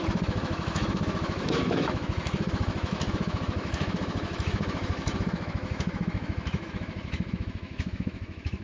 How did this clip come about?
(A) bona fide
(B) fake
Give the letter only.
B